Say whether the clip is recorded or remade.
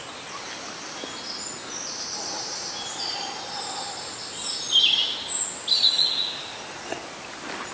recorded